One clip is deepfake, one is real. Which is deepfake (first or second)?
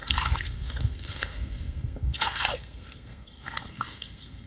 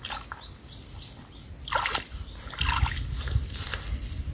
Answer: first